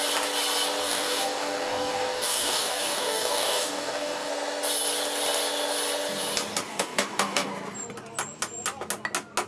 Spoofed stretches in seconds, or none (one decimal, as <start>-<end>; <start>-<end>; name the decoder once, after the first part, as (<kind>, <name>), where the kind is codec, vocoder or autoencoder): 0.8-4.3 (codec, DAC); 6.7-7.5